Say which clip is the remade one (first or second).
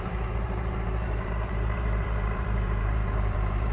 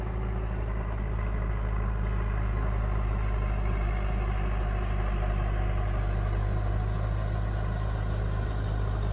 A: first